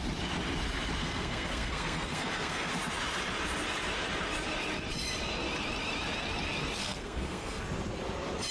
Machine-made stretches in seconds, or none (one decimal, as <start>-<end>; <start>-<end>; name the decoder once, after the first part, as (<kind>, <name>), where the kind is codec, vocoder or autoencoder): 1.0-2.7 (codec, SNAC); 6.8-7.6